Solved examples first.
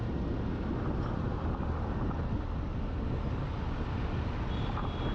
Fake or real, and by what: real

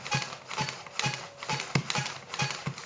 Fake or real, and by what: real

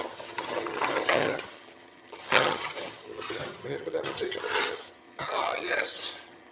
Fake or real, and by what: fake, vocoder, HiFi-GAN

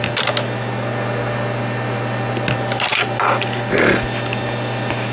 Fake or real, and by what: real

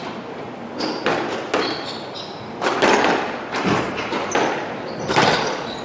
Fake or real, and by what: real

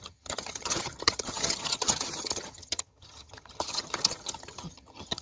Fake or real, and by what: fake, vocoder, HiFi-GAN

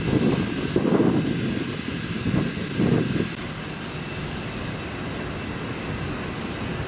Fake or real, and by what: real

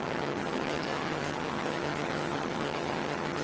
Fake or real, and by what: fake, vocoder, HiFi-GAN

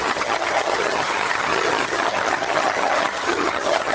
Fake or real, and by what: fake, vocoder, HiFi-GAN